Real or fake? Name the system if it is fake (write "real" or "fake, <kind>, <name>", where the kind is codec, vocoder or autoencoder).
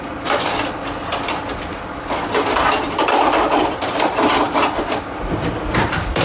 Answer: real